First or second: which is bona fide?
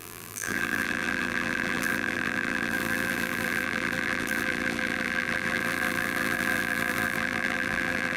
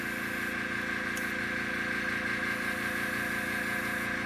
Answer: second